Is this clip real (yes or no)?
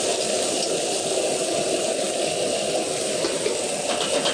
yes